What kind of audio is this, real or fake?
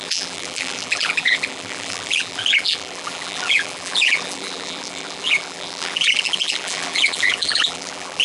fake